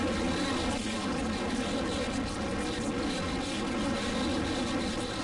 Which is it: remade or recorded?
recorded